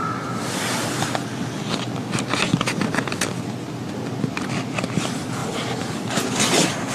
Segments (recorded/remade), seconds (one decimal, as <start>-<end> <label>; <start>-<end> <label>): 0.0-6.9 recorded